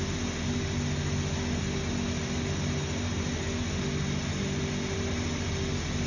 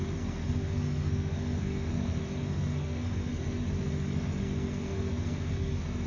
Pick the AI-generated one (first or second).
second